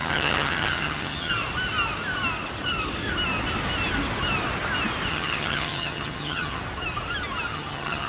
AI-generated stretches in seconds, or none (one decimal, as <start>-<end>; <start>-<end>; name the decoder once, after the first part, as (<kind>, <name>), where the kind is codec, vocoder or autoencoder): 0.0-1.3 (vocoder, HiFi-GAN); 5.1-6.6; 7.5-8.1

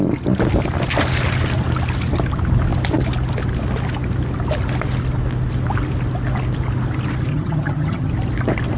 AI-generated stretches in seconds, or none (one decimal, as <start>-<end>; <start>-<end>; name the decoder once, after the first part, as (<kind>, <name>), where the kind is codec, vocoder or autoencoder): 7.3-8.1 (vocoder, HiFi-GAN)

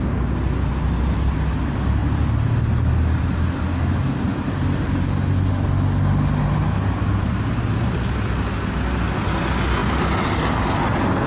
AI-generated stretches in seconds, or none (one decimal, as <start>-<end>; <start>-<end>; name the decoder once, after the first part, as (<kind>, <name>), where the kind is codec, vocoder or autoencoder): none

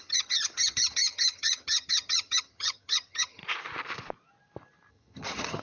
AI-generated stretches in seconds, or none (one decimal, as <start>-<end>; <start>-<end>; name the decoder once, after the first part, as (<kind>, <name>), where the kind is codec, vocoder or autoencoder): 0.0-3.4 (vocoder, HiFi-GAN); 4.9-5.6

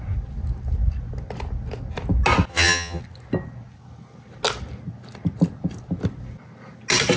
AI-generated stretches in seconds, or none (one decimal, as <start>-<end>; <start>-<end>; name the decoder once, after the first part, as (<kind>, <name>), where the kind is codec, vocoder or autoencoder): 2.5-3.0 (vocoder, HiFi-GAN)

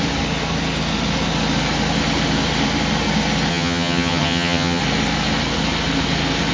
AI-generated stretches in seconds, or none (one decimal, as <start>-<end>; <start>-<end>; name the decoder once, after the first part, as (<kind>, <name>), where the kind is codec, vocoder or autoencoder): 3.5-4.8 (vocoder, HiFi-GAN)

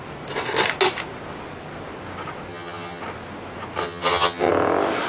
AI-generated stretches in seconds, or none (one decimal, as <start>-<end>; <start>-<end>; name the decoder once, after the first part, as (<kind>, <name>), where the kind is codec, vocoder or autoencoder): 2.5-3.0 (vocoder, HiFi-GAN); 3.8-4.5

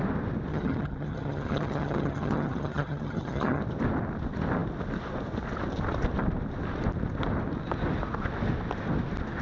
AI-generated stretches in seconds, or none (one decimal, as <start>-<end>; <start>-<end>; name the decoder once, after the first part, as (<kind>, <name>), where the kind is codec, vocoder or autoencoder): 0.5-3.6 (vocoder, HiFi-GAN)